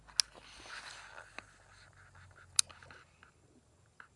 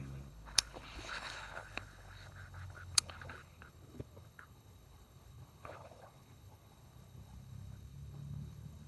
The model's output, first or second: second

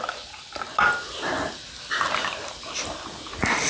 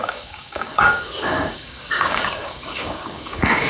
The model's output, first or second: second